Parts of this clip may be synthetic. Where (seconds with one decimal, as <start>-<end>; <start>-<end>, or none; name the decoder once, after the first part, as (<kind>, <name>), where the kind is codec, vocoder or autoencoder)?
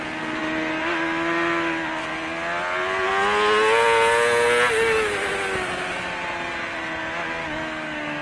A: 7.4-8.2 (codec, DAC)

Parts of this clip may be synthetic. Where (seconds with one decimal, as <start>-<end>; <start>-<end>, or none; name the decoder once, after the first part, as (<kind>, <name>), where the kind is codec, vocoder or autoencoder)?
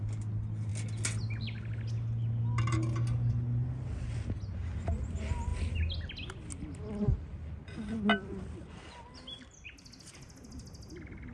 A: none